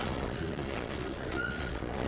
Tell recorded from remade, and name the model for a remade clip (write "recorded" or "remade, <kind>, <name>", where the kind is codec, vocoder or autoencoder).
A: remade, vocoder, Vocos